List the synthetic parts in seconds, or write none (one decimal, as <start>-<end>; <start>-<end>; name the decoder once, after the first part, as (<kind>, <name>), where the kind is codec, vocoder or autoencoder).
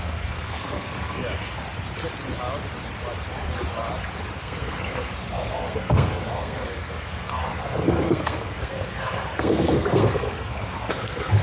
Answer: 0.0-1.2 (codec, SNAC); 4.4-11.4